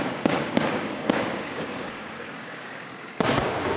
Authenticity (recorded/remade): remade